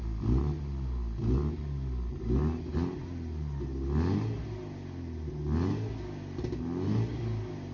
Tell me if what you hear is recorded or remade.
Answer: recorded